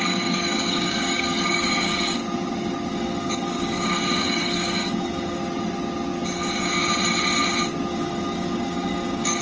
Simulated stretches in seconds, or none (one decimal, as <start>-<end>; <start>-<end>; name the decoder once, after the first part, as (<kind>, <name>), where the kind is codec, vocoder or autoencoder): 0.0-2.2 (codec, DAC); 2.9-5.4; 7.9-9.4